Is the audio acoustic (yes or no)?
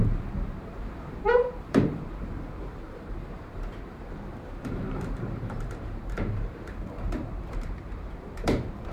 no